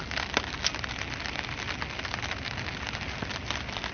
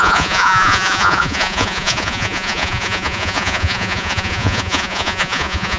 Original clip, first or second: first